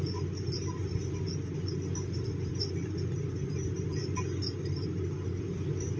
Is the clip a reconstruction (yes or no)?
no